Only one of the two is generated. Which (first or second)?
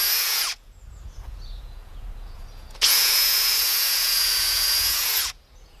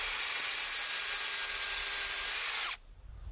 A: first